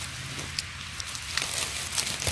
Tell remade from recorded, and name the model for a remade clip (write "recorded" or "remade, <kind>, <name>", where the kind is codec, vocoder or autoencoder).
recorded